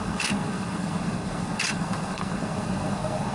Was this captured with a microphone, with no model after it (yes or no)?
no